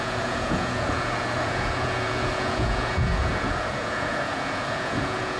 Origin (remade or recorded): remade